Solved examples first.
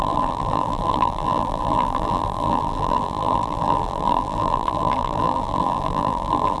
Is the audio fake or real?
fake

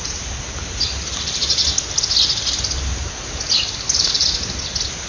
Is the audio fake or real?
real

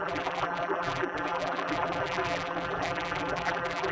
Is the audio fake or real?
fake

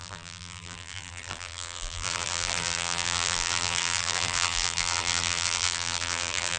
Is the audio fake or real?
fake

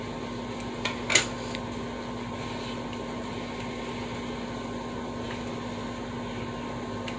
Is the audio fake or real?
real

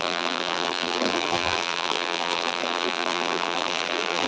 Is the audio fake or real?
fake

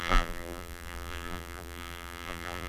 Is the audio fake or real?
fake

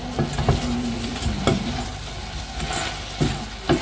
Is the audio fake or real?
real